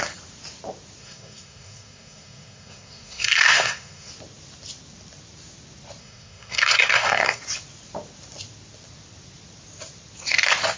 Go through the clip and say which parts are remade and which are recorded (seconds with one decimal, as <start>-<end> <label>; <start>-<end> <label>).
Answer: 0.0-1.0 recorded; 1.0-4.1 remade; 4.1-6.0 recorded; 6.0-7.4 remade; 7.4-10.8 recorded